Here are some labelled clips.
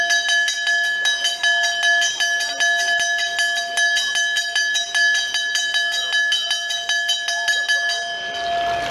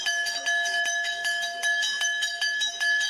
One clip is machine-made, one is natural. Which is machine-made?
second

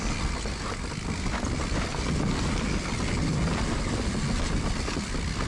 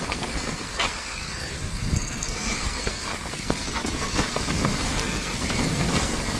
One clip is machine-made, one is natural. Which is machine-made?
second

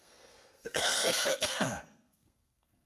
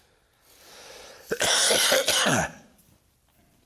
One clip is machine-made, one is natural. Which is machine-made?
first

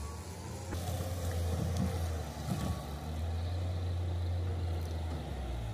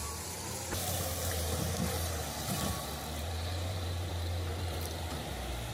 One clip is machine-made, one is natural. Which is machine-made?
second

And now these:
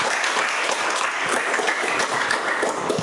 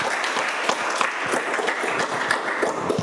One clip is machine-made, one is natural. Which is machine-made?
first